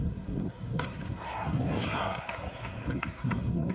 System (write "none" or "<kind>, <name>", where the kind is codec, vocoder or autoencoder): codec, SNAC